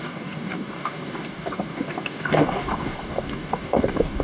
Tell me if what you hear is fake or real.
fake